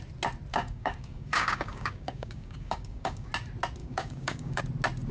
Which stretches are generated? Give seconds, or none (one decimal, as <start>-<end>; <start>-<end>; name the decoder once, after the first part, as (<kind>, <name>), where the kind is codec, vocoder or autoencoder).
0.5-3.3 (codec, DAC); 3.8-4.6